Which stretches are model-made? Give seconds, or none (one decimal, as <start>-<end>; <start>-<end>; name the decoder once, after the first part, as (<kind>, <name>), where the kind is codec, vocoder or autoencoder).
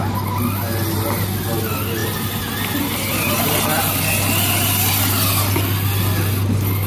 none